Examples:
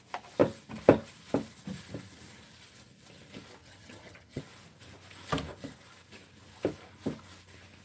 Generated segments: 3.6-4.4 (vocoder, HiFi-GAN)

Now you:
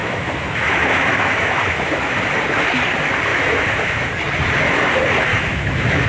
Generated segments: 0.0-2.0 (autoencoder, DAC-VAE); 3.3-4.1; 5.3-6.1

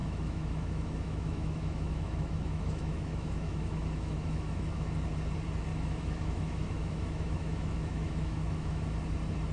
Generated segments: 0.0-4.9 (autoencoder, DAC-VAE); 5.7-8.8

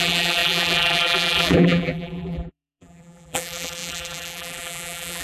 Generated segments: 0.0-5.2 (vocoder, BigVGAN v2)

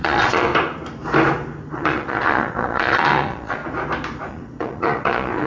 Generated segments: 0.0-0.5 (vocoder, Vocos); 1.7-3.6; 4.3-5.5